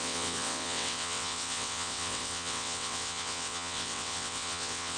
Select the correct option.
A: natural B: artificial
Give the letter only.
B